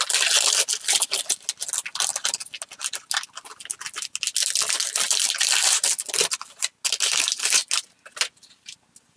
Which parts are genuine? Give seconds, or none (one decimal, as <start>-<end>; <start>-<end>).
0.0-9.2